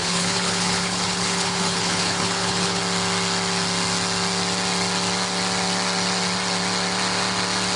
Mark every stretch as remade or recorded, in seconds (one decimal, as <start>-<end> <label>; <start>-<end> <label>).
0.0-2.8 remade; 2.8-7.8 recorded

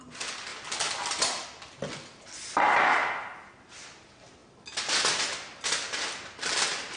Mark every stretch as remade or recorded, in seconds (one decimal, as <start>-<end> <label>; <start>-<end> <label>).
0.0-0.5 recorded; 0.5-1.9 remade; 1.9-7.0 recorded

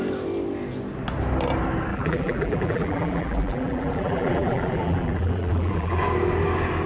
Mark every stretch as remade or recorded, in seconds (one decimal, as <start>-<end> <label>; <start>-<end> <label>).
0.0-1.9 recorded; 1.9-6.0 remade; 6.0-6.9 recorded